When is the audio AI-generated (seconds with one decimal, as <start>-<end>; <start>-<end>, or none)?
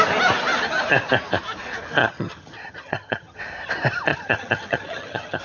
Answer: 2.0-3.4; 4.1-5.4